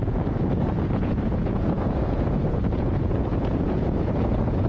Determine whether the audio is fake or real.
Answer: fake